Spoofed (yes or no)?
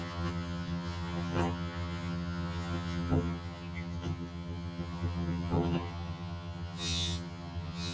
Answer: yes